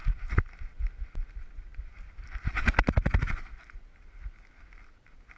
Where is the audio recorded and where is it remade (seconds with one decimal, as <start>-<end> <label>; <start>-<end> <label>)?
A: 0.0-5.4 recorded